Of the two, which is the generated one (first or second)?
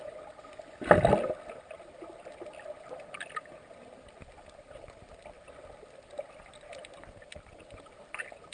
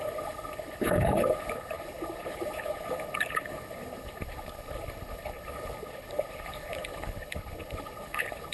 second